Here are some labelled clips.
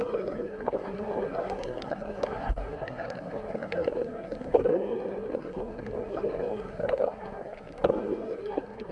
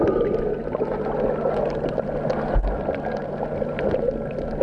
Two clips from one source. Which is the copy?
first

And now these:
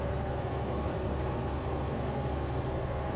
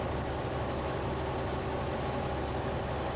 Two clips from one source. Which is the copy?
first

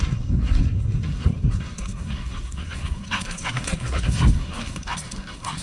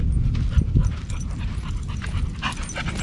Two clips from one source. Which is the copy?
first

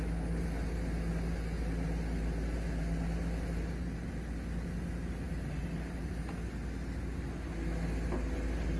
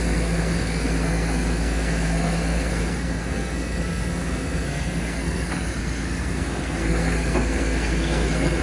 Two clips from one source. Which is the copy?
second